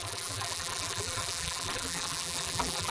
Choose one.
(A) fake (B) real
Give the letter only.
A